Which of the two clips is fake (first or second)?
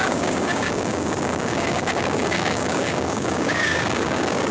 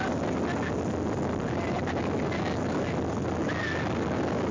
first